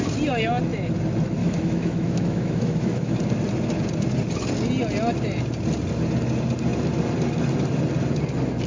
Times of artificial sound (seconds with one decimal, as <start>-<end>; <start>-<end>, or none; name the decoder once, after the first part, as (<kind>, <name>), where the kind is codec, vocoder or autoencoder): 1.4-3.2 (autoencoder, DAC-VAE)